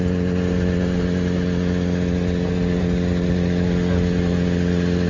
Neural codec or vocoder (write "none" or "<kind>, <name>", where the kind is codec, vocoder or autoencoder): none